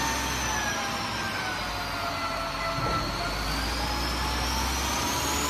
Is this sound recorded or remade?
recorded